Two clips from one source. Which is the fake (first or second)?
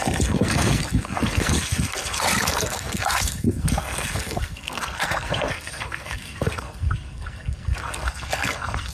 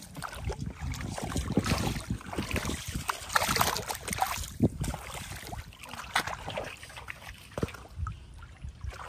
first